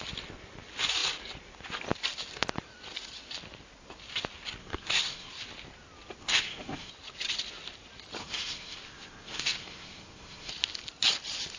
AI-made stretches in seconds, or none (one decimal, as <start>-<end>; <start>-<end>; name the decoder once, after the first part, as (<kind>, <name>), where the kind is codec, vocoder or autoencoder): 4.6-5.3 (codec, SNAC); 6.2-6.9; 8.2-10.5